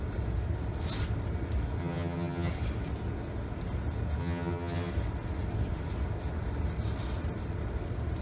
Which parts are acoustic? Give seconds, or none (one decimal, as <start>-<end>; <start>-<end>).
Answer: 0.0-1.8; 2.5-4.2; 4.9-8.2